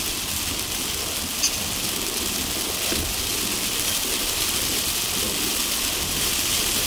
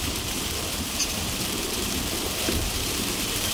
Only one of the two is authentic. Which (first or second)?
first